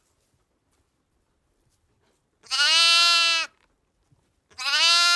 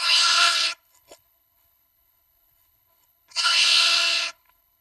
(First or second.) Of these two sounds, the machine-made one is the second